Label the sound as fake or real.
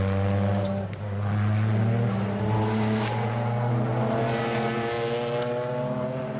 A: real